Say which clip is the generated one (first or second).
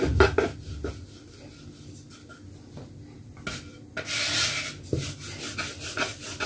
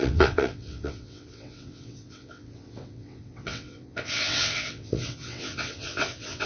second